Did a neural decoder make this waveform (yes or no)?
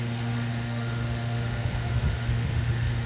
yes